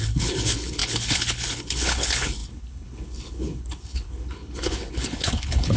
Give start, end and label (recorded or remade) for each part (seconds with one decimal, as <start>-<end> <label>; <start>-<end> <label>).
0.0-5.8 remade